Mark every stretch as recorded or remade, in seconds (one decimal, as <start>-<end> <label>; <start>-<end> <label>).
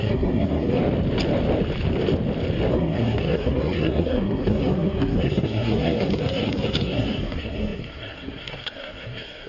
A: 0.0-0.8 remade; 0.8-2.7 recorded; 2.7-9.5 remade